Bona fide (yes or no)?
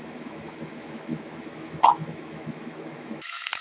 no